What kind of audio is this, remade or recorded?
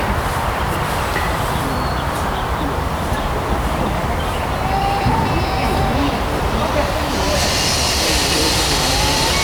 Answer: remade